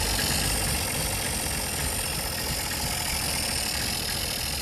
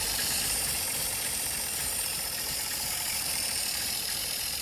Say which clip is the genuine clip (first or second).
first